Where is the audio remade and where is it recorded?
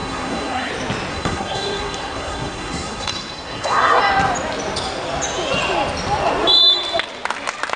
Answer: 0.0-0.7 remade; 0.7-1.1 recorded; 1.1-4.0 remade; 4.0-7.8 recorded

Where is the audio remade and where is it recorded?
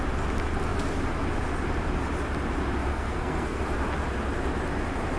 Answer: 0.0-2.9 recorded; 2.9-3.6 remade; 3.6-5.2 recorded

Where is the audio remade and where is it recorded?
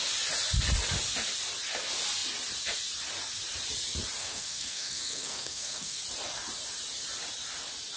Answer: 0.0-4.2 recorded; 4.2-6.0 remade; 6.0-8.0 recorded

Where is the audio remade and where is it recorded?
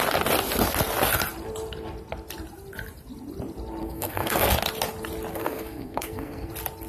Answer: 0.0-3.8 recorded; 3.8-4.5 remade; 4.5-5.3 recorded; 5.3-6.5 remade; 6.5-6.9 recorded